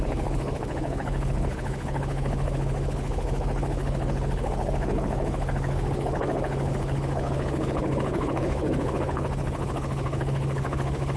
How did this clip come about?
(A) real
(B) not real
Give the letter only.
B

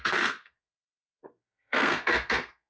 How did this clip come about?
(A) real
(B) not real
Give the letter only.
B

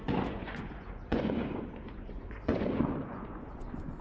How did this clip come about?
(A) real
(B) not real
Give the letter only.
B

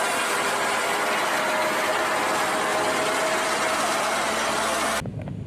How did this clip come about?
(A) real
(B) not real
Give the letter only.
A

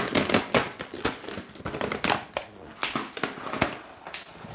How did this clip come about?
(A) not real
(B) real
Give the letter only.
B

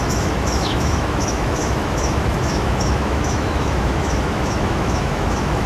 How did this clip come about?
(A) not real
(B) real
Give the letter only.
A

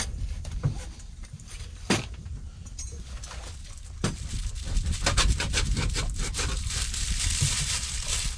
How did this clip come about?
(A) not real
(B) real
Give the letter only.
A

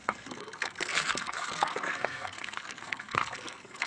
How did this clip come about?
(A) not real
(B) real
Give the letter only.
A